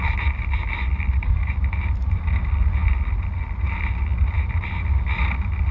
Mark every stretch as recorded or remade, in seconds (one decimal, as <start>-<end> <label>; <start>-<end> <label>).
0.0-0.9 recorded; 0.9-1.5 remade; 1.5-5.7 recorded